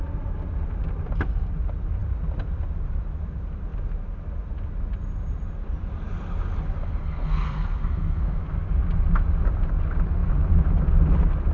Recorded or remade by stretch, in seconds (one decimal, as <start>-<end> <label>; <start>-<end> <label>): 0.0-7.0 recorded; 7.0-8.4 remade; 8.4-11.5 recorded